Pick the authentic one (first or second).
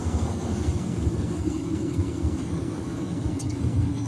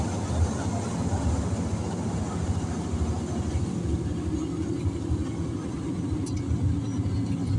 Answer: second